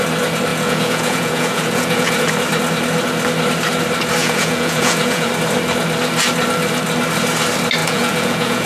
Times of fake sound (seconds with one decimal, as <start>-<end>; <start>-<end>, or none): 0.5-2.3; 4.2-5.3; 7.8-8.7